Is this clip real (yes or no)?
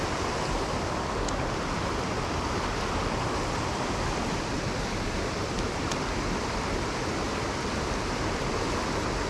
yes